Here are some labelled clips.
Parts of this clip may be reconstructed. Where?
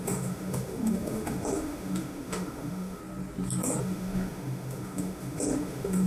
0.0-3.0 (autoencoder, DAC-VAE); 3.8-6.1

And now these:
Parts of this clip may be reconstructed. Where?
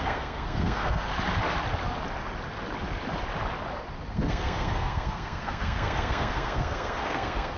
0.0-1.1 (codec, SNAC); 4.1-7.6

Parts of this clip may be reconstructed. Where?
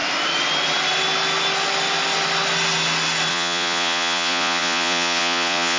3.3-5.8 (vocoder, Vocos)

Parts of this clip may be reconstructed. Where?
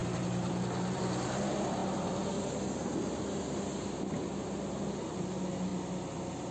0.0-1.0 (vocoder, BigVGAN v2)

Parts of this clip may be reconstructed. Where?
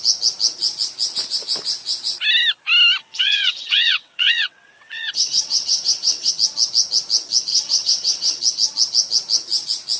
3.0-6.3 (vocoder, WaveNeXt); 7.5-8.4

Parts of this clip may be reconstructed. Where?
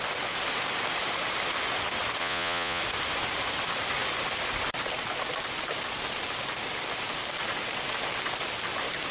2.2-2.8 (vocoder, Vocos)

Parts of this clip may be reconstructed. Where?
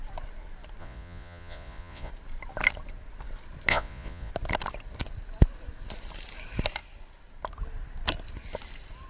0.8-2.1 (vocoder, Vocos); 3.7-4.3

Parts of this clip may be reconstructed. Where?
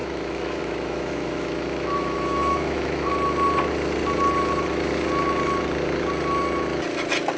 0.0-3.1 (autoencoder, DAC-VAE)